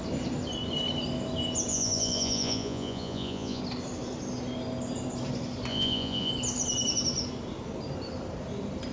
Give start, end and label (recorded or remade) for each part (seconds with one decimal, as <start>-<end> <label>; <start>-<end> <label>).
0.0-1.7 recorded; 1.7-3.6 remade; 3.6-5.7 recorded; 5.7-6.3 remade; 6.3-8.9 recorded